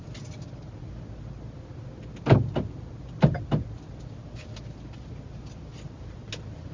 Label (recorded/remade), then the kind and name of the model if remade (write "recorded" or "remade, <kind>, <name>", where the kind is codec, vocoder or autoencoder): recorded